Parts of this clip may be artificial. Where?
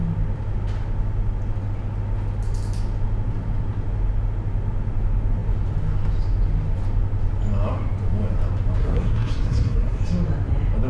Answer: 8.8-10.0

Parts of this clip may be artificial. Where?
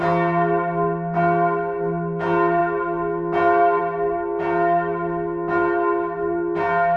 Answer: none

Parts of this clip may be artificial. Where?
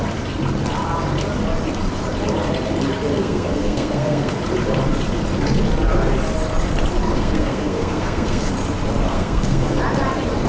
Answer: 3.1-4.4; 7.1-8.5; 9.1-9.8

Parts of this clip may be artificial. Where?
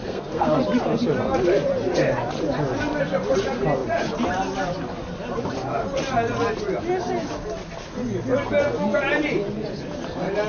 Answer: 0.0-0.6